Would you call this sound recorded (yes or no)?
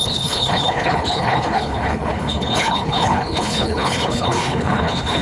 no